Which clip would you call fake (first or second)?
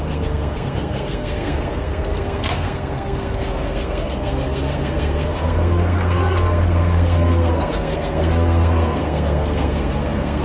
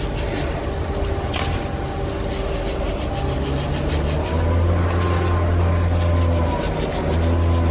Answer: first